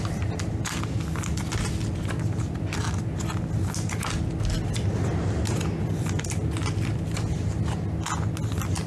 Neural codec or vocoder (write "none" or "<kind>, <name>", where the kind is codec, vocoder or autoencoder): none